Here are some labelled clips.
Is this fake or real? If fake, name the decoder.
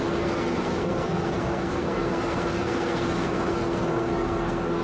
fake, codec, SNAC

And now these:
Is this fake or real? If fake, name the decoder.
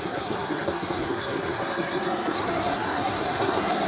fake, codec, SNAC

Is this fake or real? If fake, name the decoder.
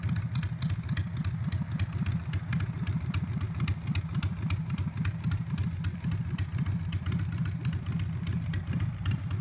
real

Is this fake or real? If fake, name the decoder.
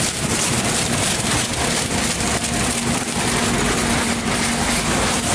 real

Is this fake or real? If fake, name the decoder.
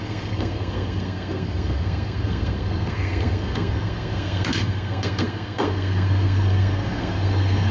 fake, codec, SNAC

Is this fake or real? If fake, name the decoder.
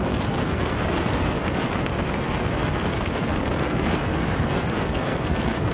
fake, codec, SNAC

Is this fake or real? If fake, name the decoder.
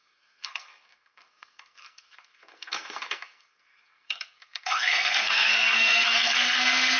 fake, codec, SNAC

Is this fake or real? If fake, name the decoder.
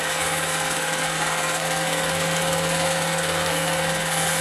fake, codec, SNAC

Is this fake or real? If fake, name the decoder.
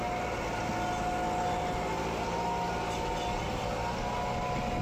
real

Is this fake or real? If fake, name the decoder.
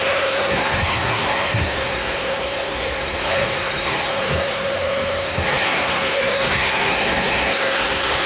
fake, codec, SNAC